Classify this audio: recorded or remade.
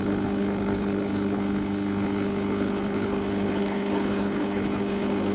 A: remade